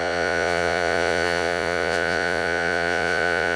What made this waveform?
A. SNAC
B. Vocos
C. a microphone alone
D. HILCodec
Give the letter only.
B